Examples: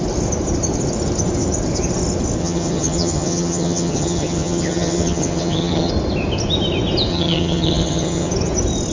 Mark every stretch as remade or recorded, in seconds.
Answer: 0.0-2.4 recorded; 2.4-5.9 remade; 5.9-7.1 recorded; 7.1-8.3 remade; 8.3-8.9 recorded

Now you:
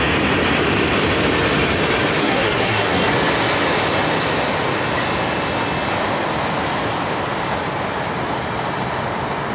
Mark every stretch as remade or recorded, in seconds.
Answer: 0.0-2.2 recorded; 2.2-3.1 remade; 3.1-9.5 recorded

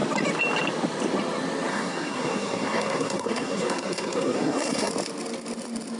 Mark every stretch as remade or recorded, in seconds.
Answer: 0.0-1.7 recorded; 1.7-4.9 remade; 4.9-6.0 recorded

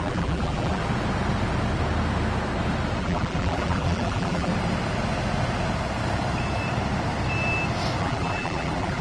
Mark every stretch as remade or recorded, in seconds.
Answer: 0.0-0.8 remade; 0.8-3.0 recorded; 3.0-4.5 remade; 4.5-8.0 recorded; 8.0-9.0 remade

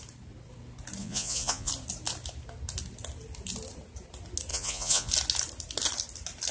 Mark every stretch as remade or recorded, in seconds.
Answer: 0.0-1.0 recorded; 1.0-1.7 remade; 1.7-4.5 recorded; 4.5-5.1 remade; 5.1-6.5 recorded

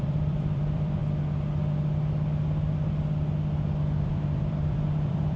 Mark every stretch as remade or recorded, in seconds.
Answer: 0.0-1.0 remade; 1.0-3.8 recorded; 3.8-5.4 remade